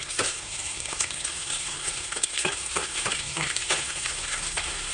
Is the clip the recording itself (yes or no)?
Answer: no